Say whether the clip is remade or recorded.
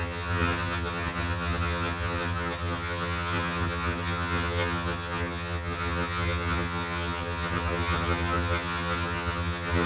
remade